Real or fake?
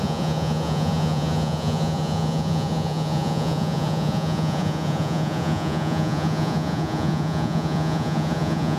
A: fake